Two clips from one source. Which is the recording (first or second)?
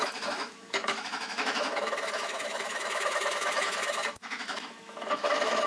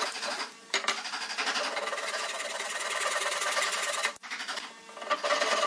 second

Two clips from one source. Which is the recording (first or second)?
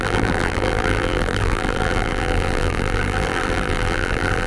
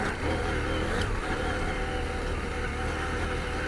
second